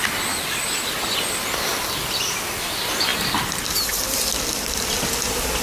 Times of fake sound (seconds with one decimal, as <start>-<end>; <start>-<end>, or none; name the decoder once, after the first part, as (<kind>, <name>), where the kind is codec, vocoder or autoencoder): none